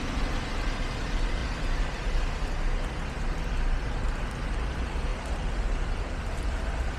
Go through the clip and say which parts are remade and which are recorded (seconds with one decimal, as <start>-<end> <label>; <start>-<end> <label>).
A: 0.0-7.0 recorded